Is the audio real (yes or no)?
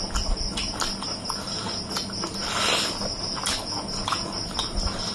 yes